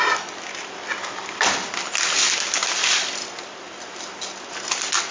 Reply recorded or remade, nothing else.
recorded